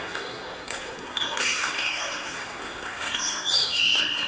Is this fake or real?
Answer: fake